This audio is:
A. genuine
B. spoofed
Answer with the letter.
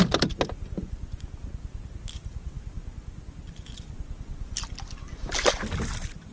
A